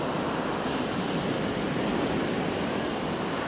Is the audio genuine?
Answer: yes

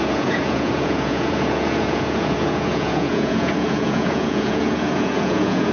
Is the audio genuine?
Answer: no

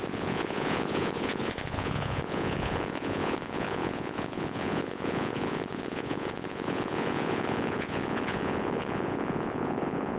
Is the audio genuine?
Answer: no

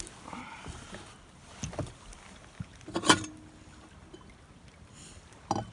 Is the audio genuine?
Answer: yes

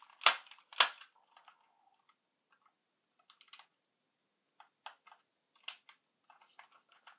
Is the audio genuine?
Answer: yes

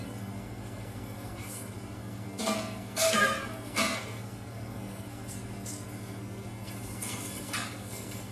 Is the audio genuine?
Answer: no